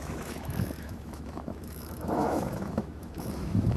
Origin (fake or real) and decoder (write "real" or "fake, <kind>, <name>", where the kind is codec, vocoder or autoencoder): fake, autoencoder, DAC-VAE